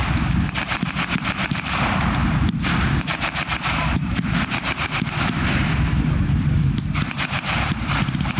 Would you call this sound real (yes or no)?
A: no